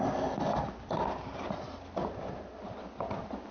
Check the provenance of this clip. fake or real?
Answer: real